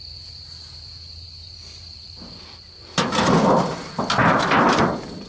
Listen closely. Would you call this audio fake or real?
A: real